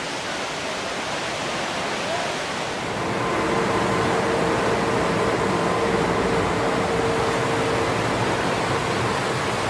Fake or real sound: real